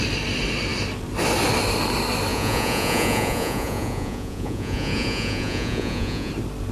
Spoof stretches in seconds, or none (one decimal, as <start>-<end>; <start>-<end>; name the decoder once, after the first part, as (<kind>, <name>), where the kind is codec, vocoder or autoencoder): 2.3-6.3 (vocoder, Vocos)